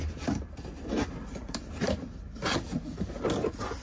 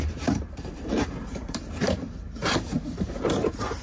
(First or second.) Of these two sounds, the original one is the first